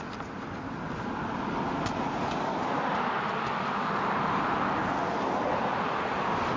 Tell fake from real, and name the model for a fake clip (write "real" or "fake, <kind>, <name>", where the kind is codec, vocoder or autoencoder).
real